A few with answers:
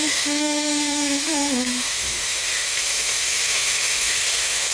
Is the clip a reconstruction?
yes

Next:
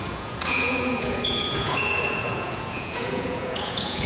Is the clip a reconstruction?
yes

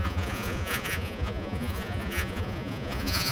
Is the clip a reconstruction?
yes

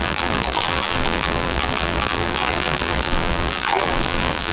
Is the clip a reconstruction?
yes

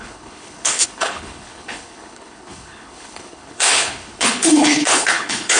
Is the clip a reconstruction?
yes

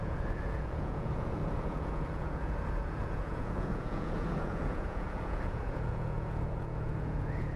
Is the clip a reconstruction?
yes